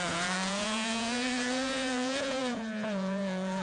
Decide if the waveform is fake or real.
fake